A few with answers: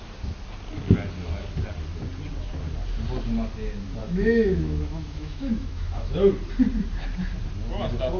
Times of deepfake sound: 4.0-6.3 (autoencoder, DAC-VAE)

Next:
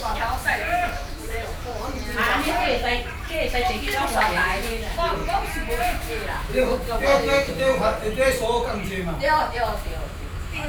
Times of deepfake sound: 0.0-1.7 (autoencoder, DAC-VAE); 3.7-5.2; 5.8-7.7; 9.5-10.7

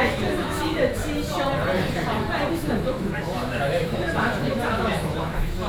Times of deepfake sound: 0.0-1.0 (autoencoder, DAC-VAE); 2.5-5.7

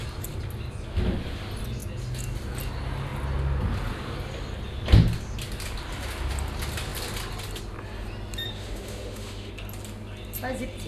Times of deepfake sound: 8.5-9.5 (autoencoder, DAC-VAE)

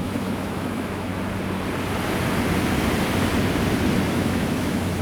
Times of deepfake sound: 0.0-1.1 (autoencoder, DAC-VAE); 4.1-5.0

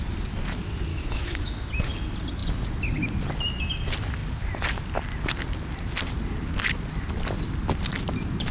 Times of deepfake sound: 0.9-1.7 (autoencoder, DAC-VAE)

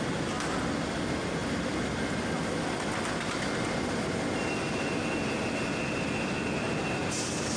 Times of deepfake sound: none

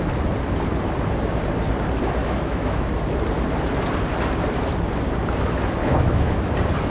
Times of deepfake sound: 2.2-2.9 (autoencoder, DAC-VAE); 5.8-6.5